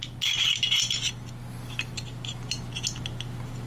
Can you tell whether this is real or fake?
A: real